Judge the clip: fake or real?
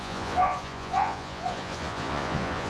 fake